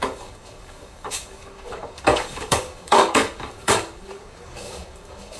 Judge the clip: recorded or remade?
remade